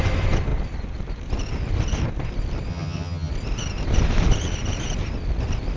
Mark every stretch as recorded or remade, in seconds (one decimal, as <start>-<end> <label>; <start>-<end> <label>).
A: 0.0-2.7 recorded; 2.7-3.3 remade; 3.3-5.8 recorded